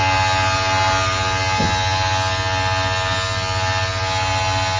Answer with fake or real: real